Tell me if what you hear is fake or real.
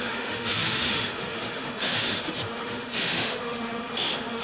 fake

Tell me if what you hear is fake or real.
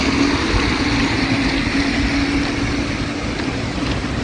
real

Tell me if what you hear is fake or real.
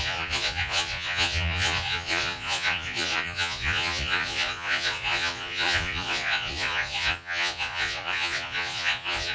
fake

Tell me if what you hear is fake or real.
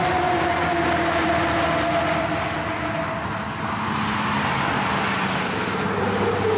real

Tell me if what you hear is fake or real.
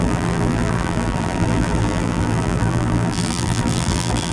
fake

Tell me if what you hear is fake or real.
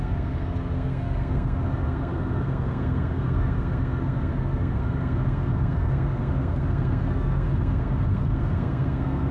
fake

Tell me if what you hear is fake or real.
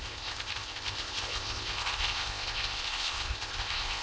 fake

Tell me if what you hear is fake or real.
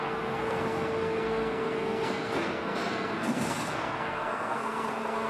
fake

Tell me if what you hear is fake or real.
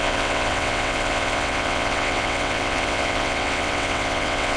fake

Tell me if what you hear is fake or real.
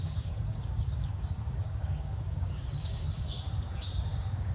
fake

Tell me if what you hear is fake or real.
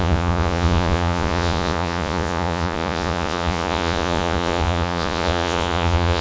fake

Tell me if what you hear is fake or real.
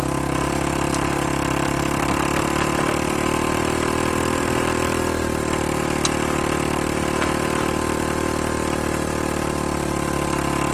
real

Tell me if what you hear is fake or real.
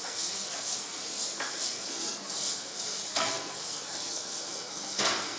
fake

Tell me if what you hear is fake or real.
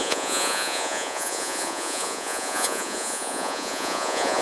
fake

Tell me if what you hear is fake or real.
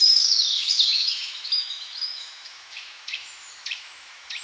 fake